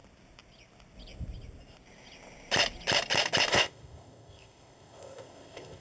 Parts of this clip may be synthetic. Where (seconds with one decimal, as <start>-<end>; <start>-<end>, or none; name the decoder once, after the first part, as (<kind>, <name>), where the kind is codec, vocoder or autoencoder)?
3.5-5.8 (codec, ZipCodec)